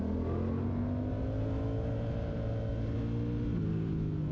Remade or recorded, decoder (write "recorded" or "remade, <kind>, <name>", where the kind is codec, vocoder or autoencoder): recorded